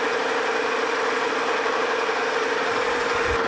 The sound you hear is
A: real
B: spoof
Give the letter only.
B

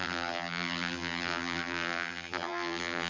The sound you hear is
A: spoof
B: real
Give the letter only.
A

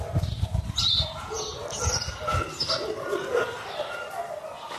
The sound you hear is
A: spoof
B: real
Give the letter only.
B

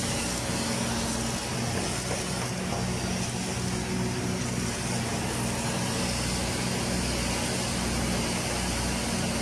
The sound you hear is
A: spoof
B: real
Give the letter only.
B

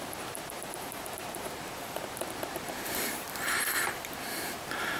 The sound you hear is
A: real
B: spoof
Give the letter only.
B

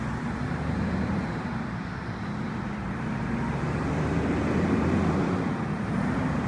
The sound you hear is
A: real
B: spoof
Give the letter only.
B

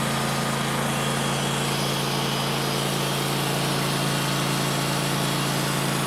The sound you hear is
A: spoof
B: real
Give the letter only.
B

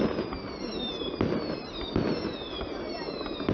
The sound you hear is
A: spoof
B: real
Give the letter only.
B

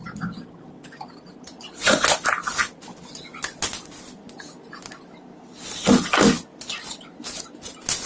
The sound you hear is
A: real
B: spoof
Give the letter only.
A